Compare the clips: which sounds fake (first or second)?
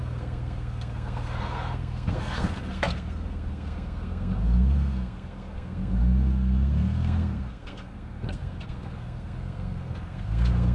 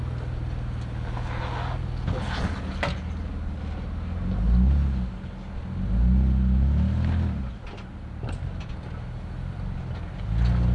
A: first